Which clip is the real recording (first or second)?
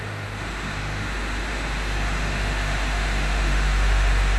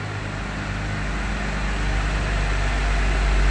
second